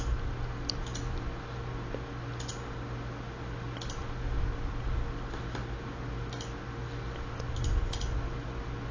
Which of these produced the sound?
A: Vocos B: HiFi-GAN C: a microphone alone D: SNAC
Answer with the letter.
C